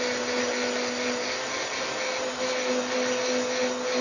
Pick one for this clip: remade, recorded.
recorded